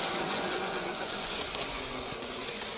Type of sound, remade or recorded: remade